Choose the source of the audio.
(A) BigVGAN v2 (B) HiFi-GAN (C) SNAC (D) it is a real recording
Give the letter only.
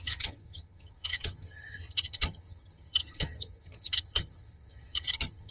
B